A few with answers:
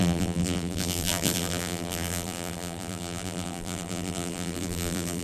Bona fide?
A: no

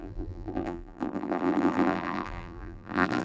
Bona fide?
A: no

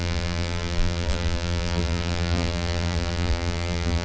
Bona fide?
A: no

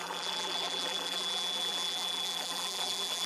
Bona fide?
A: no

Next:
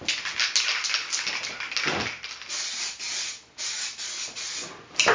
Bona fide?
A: yes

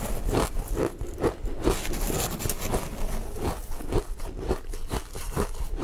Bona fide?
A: yes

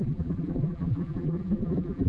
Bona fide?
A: no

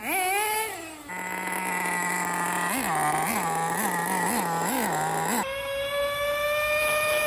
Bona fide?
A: yes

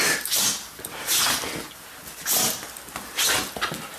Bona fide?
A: yes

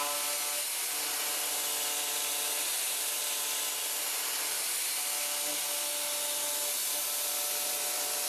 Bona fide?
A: yes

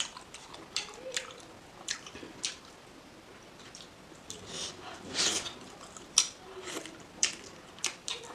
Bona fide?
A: no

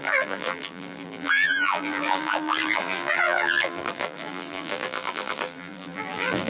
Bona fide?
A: no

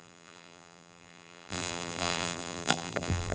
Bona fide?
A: no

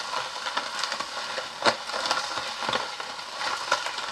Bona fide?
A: yes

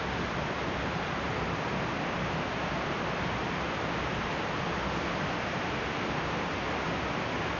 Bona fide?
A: yes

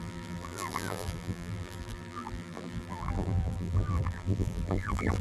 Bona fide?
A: no